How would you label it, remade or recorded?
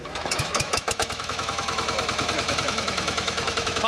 remade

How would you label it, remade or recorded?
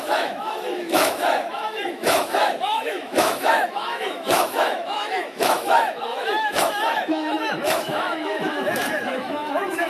remade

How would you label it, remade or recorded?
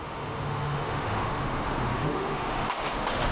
remade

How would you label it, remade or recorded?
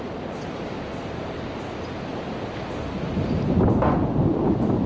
recorded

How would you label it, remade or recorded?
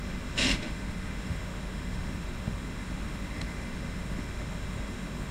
remade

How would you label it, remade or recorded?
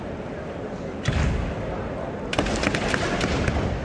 recorded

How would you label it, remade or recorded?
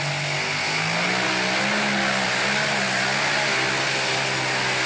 recorded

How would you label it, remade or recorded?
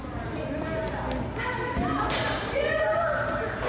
recorded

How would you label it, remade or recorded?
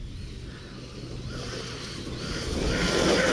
recorded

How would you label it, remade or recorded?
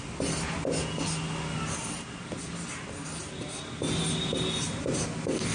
recorded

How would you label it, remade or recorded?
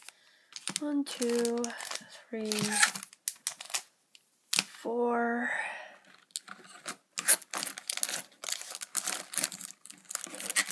recorded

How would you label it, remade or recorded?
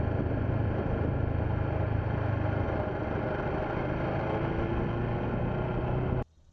recorded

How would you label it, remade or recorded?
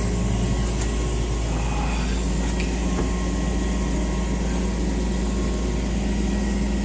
recorded